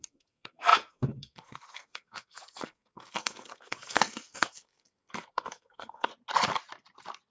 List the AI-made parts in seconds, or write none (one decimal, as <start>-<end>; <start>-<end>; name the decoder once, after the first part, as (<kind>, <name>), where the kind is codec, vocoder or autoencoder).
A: 0.0-6.1 (codec, SNAC)